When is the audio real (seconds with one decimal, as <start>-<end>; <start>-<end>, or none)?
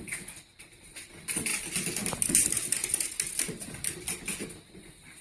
0.0-5.2